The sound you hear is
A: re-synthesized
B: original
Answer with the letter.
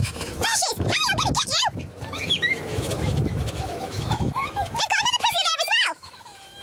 A